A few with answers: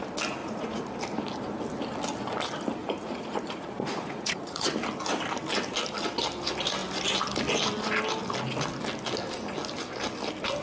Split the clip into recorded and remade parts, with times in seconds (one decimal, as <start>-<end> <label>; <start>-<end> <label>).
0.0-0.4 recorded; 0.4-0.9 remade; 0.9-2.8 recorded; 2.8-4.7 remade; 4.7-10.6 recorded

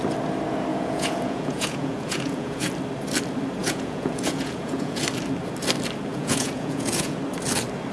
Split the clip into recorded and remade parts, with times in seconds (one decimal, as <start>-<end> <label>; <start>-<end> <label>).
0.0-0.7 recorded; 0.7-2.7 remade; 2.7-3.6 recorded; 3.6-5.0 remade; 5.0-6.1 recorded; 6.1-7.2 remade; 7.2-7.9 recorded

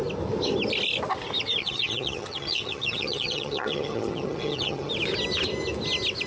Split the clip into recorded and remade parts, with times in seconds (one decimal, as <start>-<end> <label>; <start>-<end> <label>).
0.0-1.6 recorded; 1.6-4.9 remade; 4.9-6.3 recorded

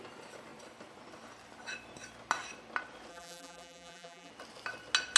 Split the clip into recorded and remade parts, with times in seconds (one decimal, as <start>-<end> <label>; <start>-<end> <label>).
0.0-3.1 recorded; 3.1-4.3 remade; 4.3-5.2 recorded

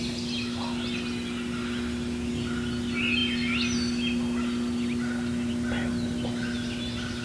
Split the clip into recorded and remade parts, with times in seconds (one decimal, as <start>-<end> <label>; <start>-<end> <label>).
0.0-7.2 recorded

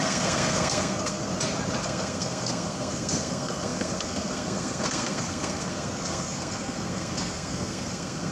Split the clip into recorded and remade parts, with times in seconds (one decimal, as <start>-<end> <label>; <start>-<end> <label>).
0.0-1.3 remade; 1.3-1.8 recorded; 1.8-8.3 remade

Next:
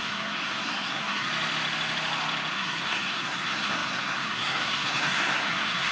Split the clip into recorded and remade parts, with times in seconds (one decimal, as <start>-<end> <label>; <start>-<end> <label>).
0.0-1.3 remade; 1.3-2.5 recorded; 2.5-5.9 remade